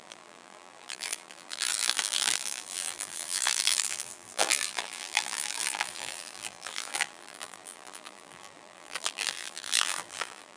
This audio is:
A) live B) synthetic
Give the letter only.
B